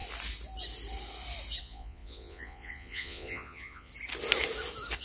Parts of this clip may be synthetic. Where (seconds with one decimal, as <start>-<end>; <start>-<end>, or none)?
1.6-3.9